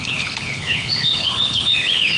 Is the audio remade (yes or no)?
yes